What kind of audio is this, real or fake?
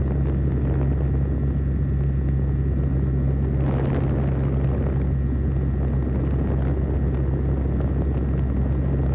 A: real